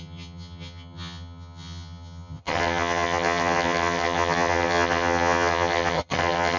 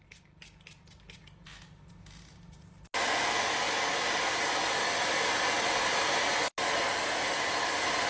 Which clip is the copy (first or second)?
first